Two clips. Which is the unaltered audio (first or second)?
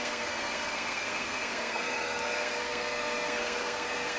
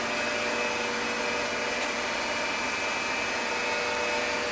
second